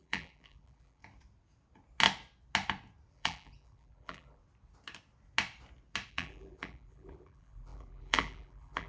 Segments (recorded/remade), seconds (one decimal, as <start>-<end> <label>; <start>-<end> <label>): 0.0-1.0 remade; 1.0-3.1 recorded; 3.1-4.4 remade; 4.4-6.1 recorded; 6.1-8.9 remade